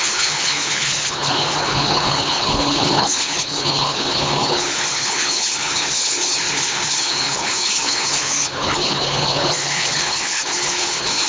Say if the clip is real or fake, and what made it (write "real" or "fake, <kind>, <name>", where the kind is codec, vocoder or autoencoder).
fake, codec, HILCodec